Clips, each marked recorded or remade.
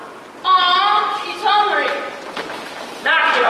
recorded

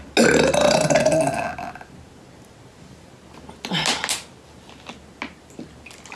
recorded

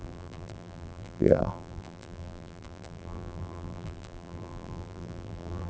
remade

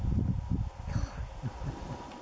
recorded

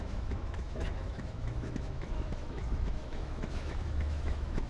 remade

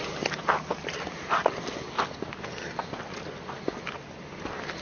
recorded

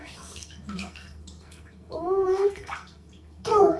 remade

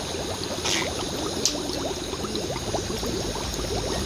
recorded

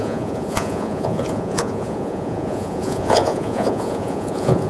remade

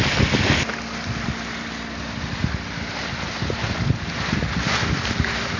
remade